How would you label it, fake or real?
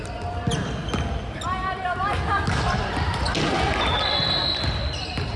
real